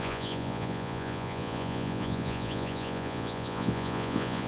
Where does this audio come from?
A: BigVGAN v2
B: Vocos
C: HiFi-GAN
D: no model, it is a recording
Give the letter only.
B